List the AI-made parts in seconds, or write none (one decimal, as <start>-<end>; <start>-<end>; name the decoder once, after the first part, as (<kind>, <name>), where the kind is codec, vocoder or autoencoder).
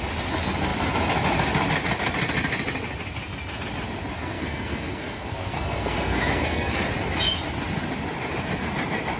4.2-6.8 (codec, SNAC)